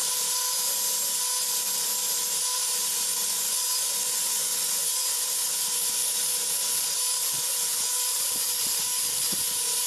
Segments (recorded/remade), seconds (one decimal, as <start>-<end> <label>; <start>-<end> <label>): 0.0-2.8 recorded; 2.8-5.6 remade; 5.6-9.9 recorded